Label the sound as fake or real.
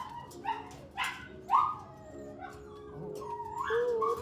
real